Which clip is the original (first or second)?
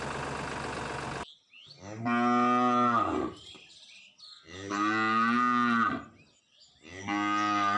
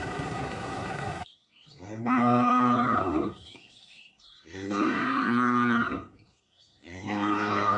first